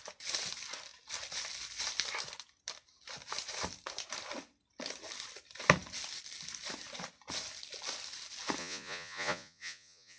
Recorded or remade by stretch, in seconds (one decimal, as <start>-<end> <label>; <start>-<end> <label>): 0.0-8.6 recorded; 8.6-10.2 remade